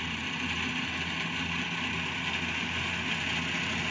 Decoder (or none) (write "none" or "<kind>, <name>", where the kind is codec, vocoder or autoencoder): none